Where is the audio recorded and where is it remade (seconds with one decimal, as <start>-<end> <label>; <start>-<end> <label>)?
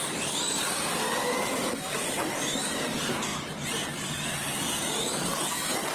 0.0-5.9 recorded